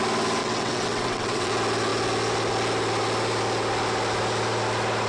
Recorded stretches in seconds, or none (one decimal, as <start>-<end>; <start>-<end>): 0.0-0.4; 1.5-5.1

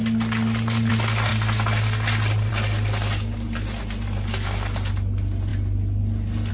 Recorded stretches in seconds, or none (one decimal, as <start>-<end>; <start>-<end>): 0.0-6.5

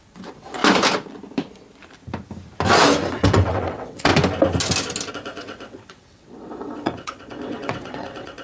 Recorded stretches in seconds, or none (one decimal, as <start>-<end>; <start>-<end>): 0.6-3.1; 4.1-5.1

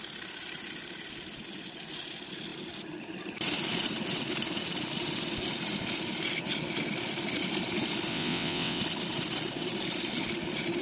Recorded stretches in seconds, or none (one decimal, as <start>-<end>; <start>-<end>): 0.0-8.1; 8.8-10.8

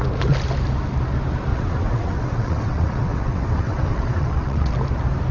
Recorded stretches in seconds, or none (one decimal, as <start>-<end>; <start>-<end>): 0.0-1.5; 4.7-5.3

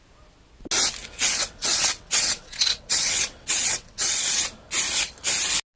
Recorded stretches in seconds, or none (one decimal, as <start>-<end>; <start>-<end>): 0.0-1.0; 4.4-5.8